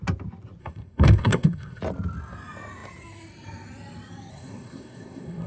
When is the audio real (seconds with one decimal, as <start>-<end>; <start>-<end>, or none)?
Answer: 0.0-0.6; 1.8-4.3